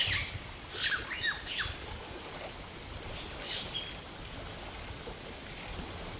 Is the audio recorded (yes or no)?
yes